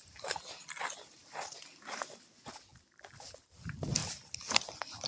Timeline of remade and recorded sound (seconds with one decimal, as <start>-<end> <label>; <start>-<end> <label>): 0.0-1.2 recorded; 1.2-2.3 remade; 2.3-2.7 recorded; 2.7-3.4 remade; 3.4-4.0 recorded; 4.0-5.1 remade